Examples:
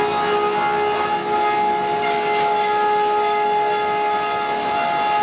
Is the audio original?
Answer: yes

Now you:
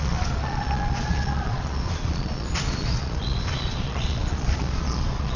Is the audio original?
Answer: no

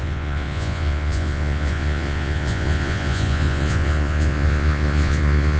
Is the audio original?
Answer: no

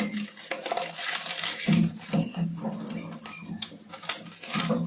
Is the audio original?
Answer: yes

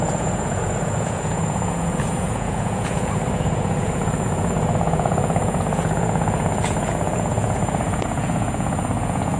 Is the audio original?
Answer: no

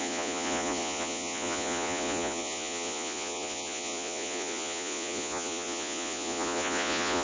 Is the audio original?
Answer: no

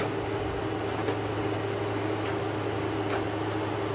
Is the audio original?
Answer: yes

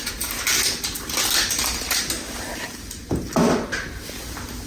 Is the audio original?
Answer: yes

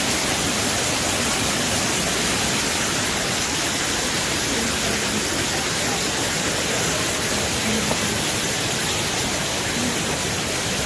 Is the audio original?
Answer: yes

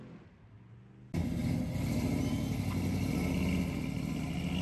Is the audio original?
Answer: yes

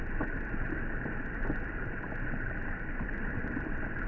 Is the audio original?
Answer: yes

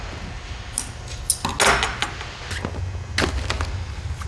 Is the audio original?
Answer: yes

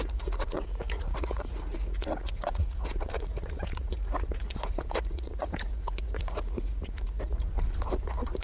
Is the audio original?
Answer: no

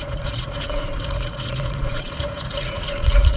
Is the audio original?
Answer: no